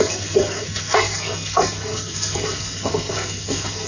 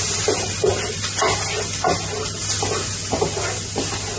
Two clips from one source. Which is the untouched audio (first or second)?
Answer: second